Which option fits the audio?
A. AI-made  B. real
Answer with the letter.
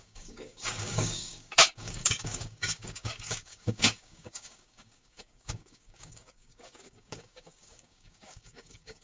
A